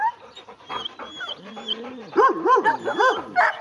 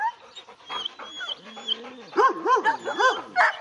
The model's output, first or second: first